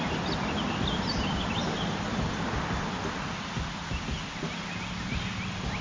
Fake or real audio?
real